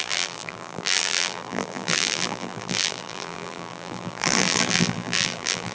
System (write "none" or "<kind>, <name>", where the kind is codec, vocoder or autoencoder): vocoder, BigVGAN v2